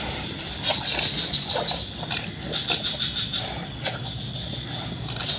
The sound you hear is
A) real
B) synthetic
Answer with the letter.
A